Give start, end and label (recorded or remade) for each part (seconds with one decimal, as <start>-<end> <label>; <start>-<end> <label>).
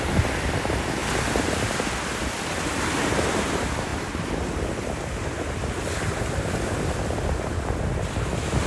0.0-8.7 recorded